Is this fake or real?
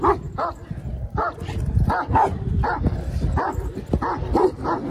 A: real